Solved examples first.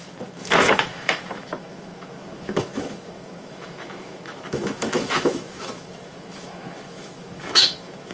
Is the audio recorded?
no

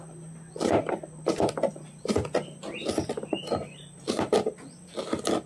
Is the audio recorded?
yes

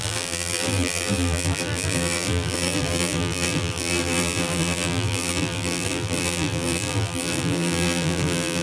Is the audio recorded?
no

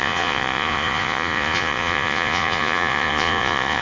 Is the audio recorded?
no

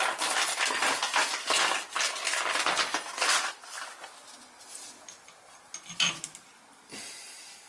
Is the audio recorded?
yes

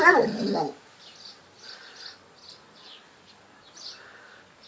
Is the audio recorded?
yes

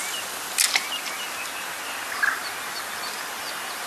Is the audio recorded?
yes